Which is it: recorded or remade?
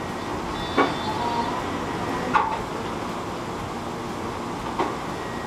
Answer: recorded